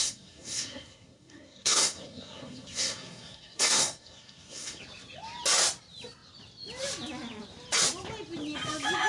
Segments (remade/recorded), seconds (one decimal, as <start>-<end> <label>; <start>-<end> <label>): 0.0-4.8 remade; 4.8-9.1 recorded